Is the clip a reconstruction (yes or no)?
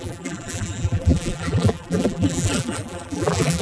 yes